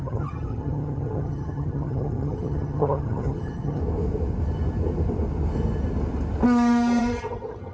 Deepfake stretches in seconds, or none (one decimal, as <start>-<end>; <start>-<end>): 0.0-3.8; 7.0-7.7